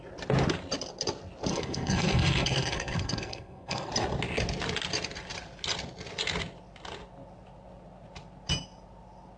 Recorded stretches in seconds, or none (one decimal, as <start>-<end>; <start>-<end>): 0.0-1.5; 3.9-9.4